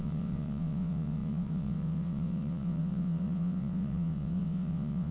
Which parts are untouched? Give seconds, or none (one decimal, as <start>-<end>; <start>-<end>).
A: none